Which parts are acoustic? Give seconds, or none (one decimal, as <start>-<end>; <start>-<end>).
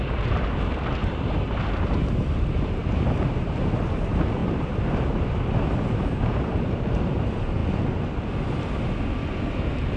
0.0-1.0; 1.6-4.4; 6.7-10.0